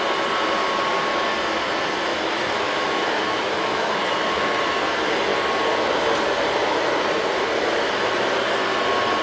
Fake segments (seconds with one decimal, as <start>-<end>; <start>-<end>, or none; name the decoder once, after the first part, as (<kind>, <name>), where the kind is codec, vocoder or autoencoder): 2.1-4.6 (autoencoder, DAC-VAE)